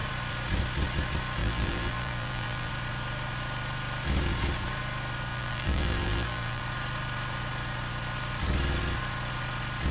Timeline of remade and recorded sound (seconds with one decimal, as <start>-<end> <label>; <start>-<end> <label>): 0.0-1.4 recorded; 1.4-2.7 remade; 2.7-5.3 recorded; 5.3-6.6 remade; 6.6-9.9 recorded